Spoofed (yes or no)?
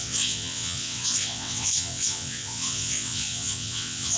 yes